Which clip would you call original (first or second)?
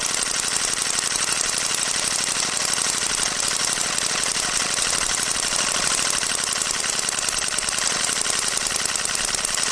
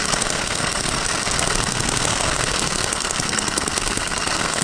first